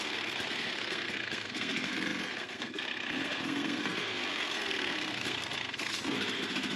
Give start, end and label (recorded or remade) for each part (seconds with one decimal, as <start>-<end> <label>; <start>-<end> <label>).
0.0-6.8 remade